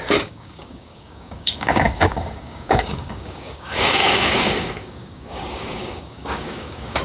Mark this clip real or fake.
fake